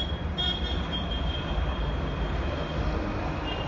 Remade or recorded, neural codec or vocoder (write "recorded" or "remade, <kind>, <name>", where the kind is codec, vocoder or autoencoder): remade, vocoder, BigVGAN v2